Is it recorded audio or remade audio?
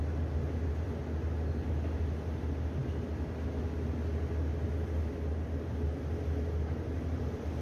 recorded